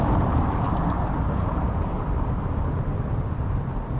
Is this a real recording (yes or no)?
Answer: no